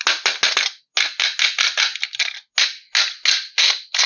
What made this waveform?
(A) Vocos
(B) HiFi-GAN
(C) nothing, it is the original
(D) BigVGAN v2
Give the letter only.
C